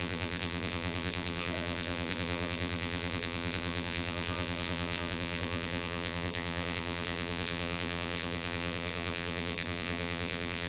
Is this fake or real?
fake